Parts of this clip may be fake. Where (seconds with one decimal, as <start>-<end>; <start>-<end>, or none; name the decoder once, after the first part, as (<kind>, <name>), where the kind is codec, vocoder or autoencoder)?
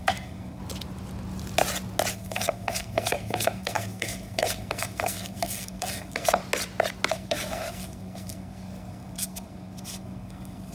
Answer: 0.0-0.6 (codec, SNAC); 2.1-6.4; 7.1-10.7